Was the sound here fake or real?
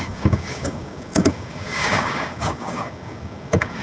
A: fake